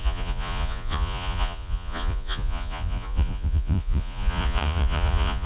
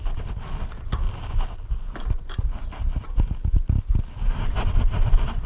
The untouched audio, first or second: second